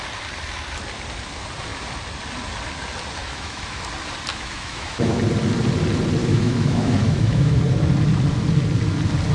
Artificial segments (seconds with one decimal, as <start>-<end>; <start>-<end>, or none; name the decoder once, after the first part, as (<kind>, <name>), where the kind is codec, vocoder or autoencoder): 3.2-3.8 (autoencoder, DAC-VAE); 4.3-5.2; 6.2-7.6